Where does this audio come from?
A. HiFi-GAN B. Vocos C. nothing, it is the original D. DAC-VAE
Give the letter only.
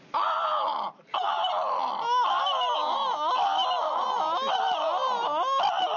C